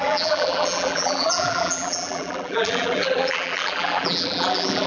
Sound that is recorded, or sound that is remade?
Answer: remade